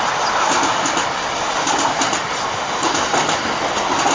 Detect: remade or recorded recorded